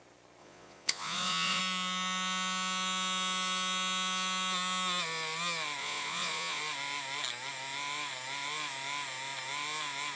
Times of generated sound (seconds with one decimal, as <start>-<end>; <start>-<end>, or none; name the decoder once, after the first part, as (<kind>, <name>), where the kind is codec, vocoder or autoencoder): 0.4-1.6 (vocoder, Vocos); 5.8-6.6